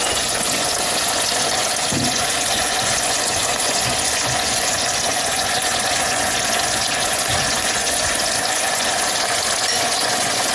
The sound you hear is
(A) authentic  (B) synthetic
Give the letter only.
B